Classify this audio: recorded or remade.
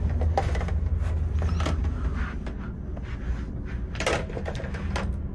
recorded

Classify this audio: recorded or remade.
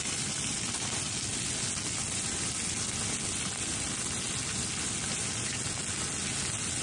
recorded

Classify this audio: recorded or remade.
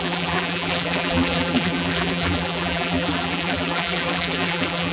remade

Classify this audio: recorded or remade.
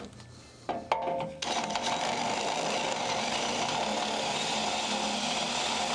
recorded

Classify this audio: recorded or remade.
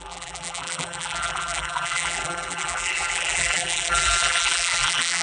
remade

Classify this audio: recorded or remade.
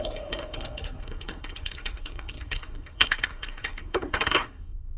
remade